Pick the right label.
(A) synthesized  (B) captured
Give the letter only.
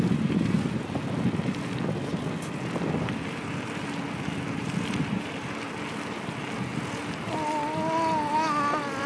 B